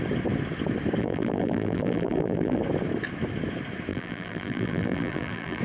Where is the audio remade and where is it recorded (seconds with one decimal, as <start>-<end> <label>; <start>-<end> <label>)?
0.0-1.0 recorded; 1.0-2.6 remade; 2.6-3.9 recorded; 3.9-5.6 remade